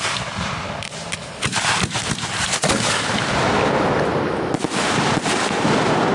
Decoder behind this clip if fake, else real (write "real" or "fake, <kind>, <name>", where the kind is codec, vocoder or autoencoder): real